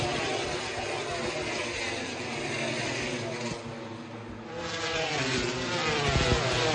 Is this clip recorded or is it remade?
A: recorded